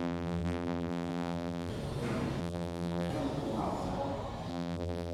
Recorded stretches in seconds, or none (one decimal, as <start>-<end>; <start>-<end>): 1.7-2.4; 3.1-4.5